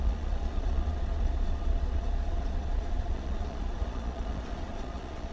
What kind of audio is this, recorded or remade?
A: remade